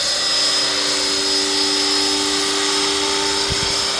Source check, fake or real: real